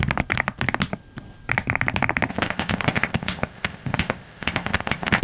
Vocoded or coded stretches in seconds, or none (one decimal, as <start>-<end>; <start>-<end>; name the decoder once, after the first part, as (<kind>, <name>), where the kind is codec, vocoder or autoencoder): 2.3-5.2 (codec, ZipCodec)